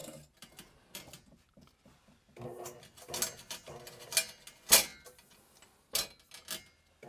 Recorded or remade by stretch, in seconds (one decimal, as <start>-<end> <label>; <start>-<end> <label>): 0.0-7.1 recorded